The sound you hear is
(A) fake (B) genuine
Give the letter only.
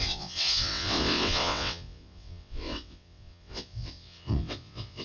A